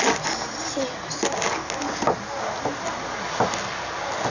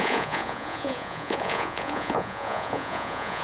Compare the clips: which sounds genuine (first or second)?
first